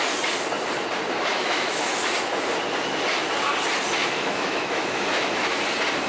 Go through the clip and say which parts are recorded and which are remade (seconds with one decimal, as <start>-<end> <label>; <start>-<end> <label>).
0.0-1.3 recorded; 1.3-2.0 remade; 2.0-4.0 recorded; 4.0-5.6 remade; 5.6-6.1 recorded